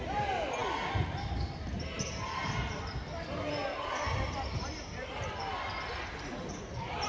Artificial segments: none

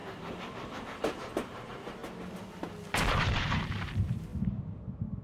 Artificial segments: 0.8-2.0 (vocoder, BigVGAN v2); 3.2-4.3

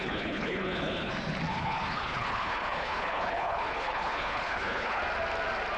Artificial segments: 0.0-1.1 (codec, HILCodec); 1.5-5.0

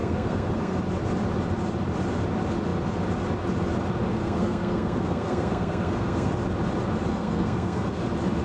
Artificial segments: 0.0-0.8 (codec, SNAC); 4.1-6.3; 7.1-8.0